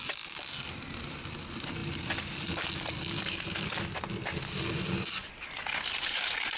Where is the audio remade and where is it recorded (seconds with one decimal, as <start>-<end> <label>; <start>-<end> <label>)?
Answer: 0.0-6.6 recorded